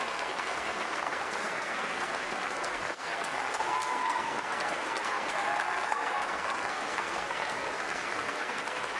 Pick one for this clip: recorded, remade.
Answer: remade